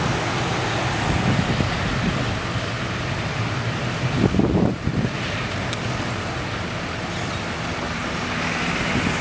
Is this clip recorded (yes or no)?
yes